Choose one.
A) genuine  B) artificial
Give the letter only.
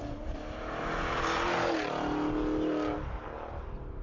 A